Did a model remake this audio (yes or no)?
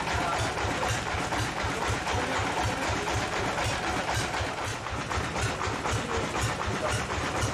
no